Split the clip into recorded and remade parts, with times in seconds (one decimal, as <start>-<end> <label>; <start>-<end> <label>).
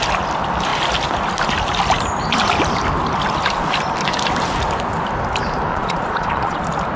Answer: 0.0-5.7 recorded; 5.7-6.6 remade; 6.6-7.0 recorded